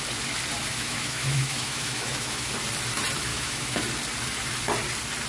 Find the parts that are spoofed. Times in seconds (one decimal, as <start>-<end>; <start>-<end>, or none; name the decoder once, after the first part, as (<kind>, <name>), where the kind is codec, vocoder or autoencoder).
0.7-2.5 (autoencoder, DAC-VAE); 3.3-3.8